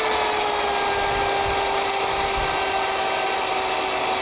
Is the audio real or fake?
real